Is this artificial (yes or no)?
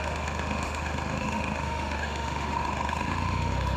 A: yes